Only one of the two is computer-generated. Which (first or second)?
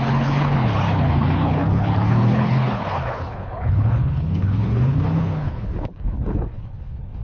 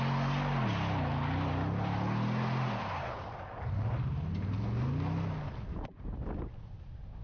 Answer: first